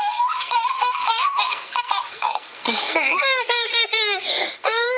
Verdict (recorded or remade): remade